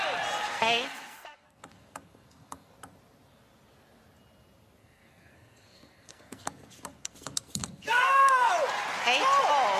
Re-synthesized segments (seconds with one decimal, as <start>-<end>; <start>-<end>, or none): 0.4-2.7; 4.8-8.5